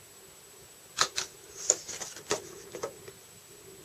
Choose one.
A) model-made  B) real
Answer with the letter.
B